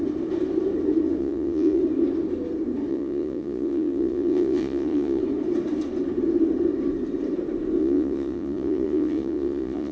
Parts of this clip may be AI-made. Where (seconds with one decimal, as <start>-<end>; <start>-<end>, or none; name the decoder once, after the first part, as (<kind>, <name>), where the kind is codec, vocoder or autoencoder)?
1.2-1.8 (vocoder, Vocos); 2.9-5.2; 7.8-9.9